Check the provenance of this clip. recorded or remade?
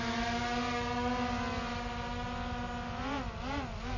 recorded